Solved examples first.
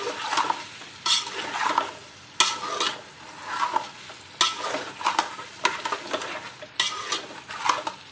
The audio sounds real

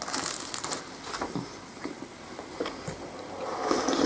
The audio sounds real